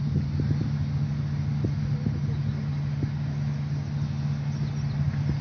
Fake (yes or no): no